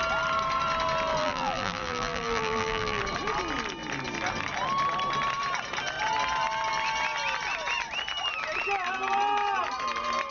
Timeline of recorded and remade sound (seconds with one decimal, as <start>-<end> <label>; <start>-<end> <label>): 0.0-1.2 recorded; 1.2-3.0 remade; 3.0-10.3 recorded